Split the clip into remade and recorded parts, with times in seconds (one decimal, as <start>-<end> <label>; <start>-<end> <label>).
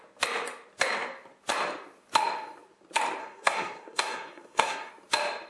0.0-3.2 recorded; 3.2-4.9 remade; 4.9-5.5 recorded